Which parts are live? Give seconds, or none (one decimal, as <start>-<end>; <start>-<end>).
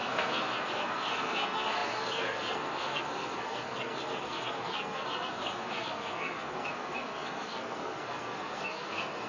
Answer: none